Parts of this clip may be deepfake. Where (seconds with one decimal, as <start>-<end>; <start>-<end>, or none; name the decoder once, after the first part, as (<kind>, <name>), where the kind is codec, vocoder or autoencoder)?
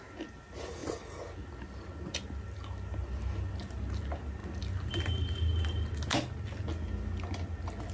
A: none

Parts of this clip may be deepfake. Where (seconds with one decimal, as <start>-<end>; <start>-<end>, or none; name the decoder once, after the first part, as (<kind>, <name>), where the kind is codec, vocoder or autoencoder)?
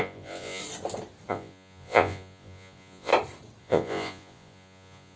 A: 0.0-0.6 (vocoder, Vocos); 1.3-3.1; 3.6-5.2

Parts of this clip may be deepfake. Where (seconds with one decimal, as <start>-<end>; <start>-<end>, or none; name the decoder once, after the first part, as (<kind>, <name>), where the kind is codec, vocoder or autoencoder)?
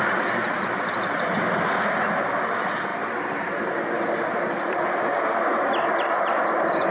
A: none